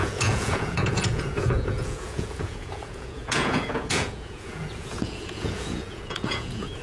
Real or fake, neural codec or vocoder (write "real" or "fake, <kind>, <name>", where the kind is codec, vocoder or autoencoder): fake, vocoder, Vocos